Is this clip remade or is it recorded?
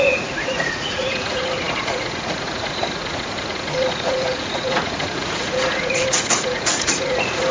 remade